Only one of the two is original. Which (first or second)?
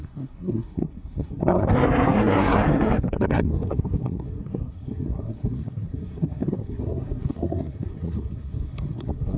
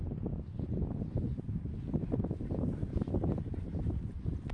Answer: second